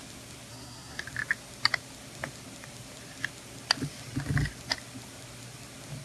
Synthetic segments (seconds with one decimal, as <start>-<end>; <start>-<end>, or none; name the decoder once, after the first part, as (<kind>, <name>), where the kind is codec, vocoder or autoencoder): 0.5-1.0 (codec, SNAC)